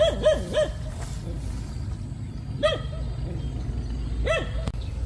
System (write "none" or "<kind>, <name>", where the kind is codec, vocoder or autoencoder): none